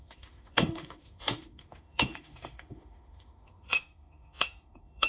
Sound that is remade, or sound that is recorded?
remade